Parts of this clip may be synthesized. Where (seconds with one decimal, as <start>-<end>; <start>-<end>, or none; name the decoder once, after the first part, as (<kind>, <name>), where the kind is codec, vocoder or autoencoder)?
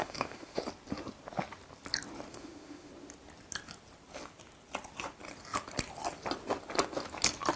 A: 0.0-0.6 (autoencoder, DAC-VAE); 2.3-2.9